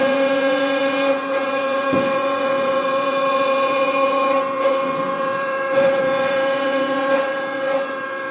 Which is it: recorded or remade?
remade